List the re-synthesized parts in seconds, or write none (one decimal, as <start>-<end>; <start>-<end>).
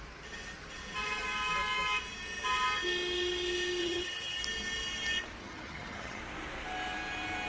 3.8-4.4; 5.4-6.2